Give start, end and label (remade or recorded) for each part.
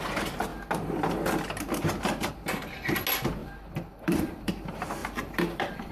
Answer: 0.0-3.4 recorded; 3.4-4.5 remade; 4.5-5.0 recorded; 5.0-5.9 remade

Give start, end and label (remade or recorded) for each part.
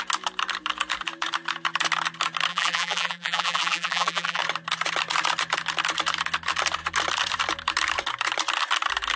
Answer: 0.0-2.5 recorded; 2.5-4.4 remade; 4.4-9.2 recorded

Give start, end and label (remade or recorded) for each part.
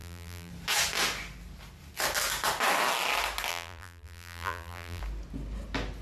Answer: 0.0-0.5 remade; 0.5-3.5 recorded; 3.5-5.0 remade; 5.0-6.0 recorded